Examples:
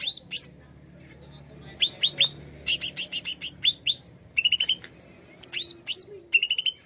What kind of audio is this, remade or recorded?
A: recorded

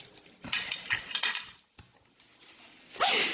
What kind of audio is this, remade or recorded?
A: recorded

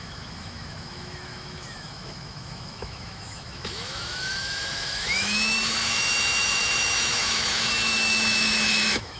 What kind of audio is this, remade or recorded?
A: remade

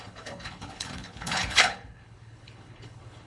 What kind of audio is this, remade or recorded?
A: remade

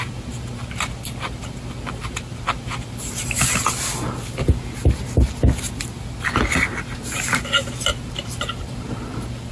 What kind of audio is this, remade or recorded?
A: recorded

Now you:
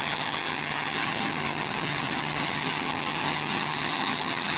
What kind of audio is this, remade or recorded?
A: remade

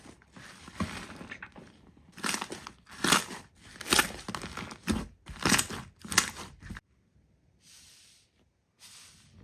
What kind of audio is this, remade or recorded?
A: recorded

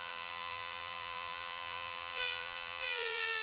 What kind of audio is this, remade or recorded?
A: remade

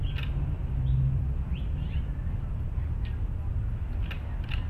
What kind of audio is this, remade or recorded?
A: recorded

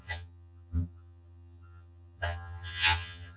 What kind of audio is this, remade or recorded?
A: remade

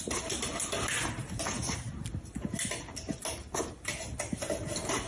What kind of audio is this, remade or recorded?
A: recorded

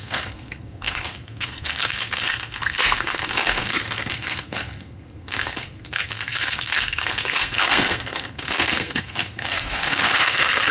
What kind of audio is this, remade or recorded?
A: remade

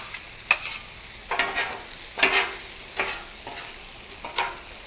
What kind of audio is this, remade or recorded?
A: recorded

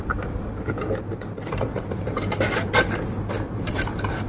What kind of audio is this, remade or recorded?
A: remade